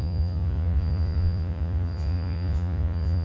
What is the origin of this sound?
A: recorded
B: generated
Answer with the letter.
B